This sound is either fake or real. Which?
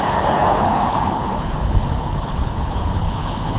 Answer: fake